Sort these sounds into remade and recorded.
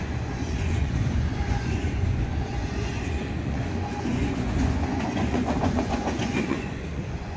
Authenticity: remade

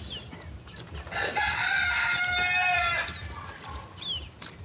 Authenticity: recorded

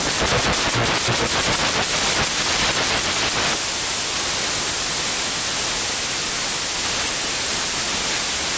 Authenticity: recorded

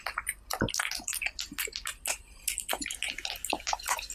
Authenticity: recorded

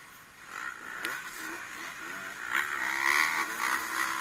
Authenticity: recorded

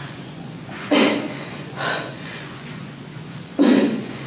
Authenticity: remade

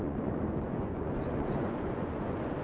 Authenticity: remade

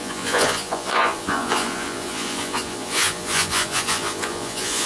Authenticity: remade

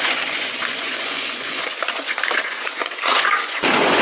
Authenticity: remade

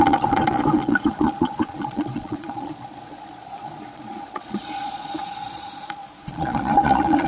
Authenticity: remade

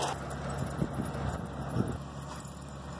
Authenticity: recorded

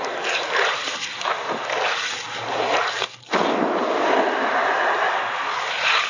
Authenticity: recorded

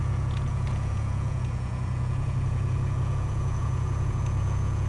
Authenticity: remade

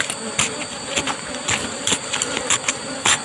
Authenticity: recorded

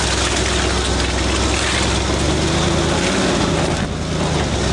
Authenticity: recorded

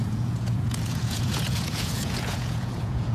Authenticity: remade